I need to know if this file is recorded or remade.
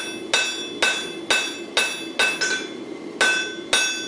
recorded